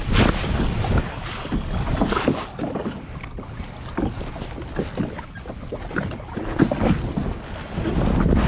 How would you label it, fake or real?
real